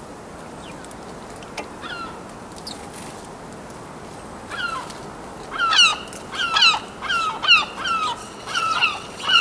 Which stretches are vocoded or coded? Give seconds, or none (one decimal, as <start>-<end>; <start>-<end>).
8.2-9.4